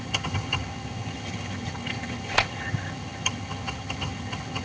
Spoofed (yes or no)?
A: yes